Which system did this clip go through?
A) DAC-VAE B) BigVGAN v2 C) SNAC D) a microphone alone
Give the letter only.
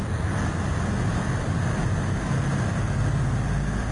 D